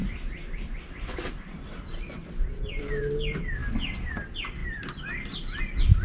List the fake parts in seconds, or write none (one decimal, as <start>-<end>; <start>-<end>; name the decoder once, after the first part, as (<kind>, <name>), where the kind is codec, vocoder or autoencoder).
0.0-2.9 (vocoder, BigVGAN v2)